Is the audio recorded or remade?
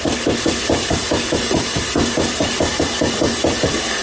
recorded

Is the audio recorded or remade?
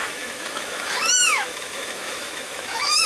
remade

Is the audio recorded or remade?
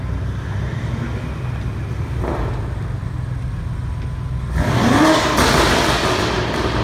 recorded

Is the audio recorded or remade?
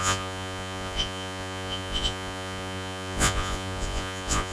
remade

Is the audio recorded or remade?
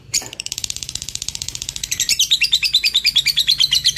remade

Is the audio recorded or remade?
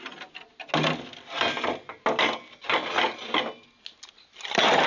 recorded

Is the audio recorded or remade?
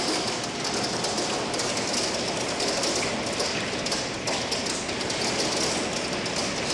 recorded